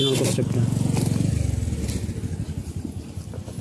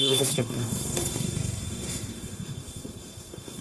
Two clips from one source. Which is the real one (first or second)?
first